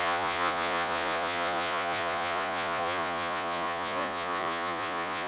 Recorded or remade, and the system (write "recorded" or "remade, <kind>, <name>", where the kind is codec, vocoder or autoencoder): remade, vocoder, Vocos